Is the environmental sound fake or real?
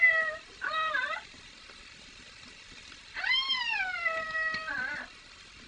fake